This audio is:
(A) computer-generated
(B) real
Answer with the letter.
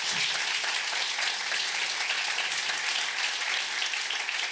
B